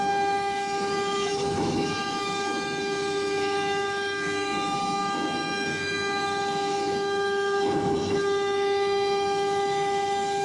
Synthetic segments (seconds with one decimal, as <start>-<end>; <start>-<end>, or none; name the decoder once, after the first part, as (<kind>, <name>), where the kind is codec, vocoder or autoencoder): 0.0-10.4 (autoencoder, DAC-VAE)